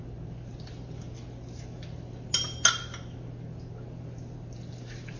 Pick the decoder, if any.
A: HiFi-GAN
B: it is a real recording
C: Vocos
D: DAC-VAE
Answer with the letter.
B